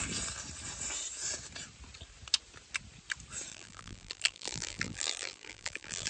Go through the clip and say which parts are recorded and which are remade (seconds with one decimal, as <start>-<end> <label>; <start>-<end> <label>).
0.0-3.5 recorded; 3.5-6.1 remade